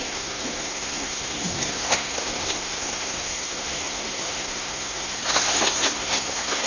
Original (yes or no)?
no